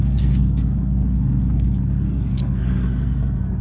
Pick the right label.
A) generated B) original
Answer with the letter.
A